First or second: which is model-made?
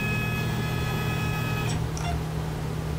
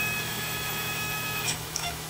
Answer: second